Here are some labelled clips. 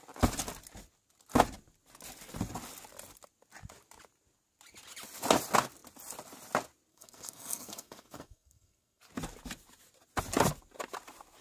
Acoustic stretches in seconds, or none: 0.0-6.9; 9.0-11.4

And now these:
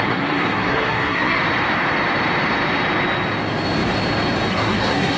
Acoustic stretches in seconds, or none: 1.4-4.5